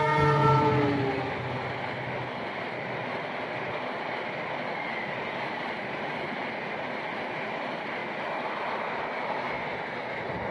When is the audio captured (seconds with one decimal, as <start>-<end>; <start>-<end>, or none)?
0.0-10.5